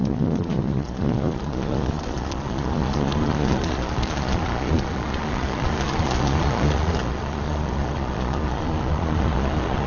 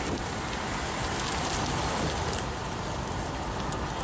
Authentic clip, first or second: second